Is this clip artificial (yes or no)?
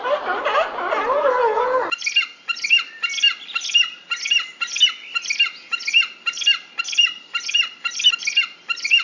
no